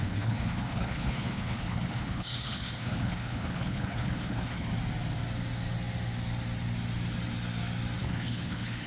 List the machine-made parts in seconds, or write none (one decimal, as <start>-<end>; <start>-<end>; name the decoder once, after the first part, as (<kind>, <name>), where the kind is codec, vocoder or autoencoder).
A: 0.0-4.7 (codec, HILCodec); 8.0-8.9